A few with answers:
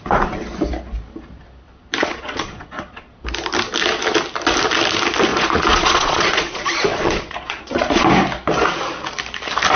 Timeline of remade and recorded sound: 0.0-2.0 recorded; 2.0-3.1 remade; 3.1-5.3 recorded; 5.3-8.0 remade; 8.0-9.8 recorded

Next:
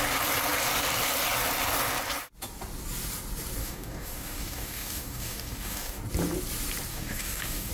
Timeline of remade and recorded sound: 0.0-3.6 recorded; 3.6-6.0 remade; 6.0-6.9 recorded; 6.9-7.7 remade

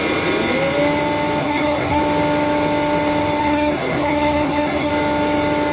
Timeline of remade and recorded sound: 0.0-1.4 recorded; 1.4-2.0 remade; 2.0-3.4 recorded; 3.4-4.9 remade; 4.9-5.7 recorded

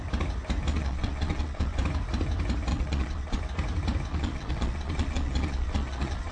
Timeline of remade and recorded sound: 0.0-0.7 recorded; 0.7-1.8 remade; 1.8-2.7 recorded; 2.7-3.4 remade; 3.4-4.1 recorded; 4.1-6.3 remade

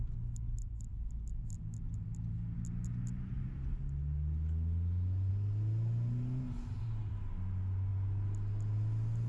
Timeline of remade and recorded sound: 0.0-9.3 recorded

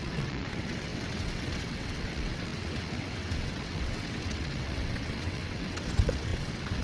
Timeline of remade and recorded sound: 0.0-6.8 remade